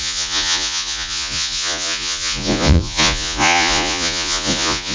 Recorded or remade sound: remade